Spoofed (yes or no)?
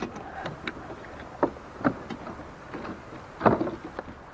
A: no